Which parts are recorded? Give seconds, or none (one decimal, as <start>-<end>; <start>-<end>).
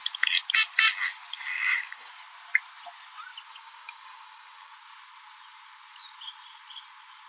0.0-1.5; 2.1-3.5; 4.7-7.3